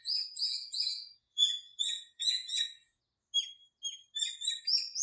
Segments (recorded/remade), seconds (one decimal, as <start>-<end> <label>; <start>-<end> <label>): 0.0-3.0 remade; 3.0-5.0 recorded